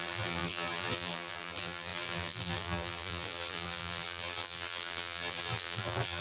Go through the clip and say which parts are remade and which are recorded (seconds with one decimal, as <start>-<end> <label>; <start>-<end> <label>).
0.0-6.2 remade